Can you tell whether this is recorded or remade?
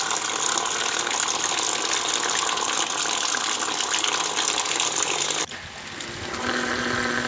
recorded